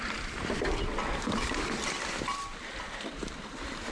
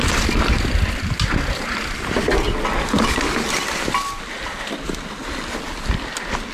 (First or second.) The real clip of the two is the second